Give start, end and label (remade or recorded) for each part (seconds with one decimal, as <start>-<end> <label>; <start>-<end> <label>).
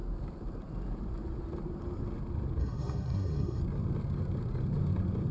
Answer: 0.0-2.6 recorded; 2.6-3.6 remade; 3.6-5.3 recorded